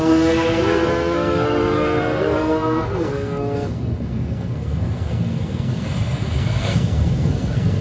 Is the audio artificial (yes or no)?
yes